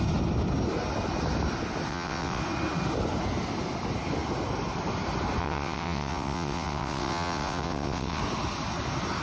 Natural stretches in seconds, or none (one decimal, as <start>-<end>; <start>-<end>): 0.0-1.9; 2.4-5.4; 8.2-9.2